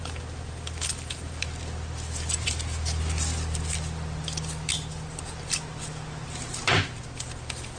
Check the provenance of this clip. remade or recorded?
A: recorded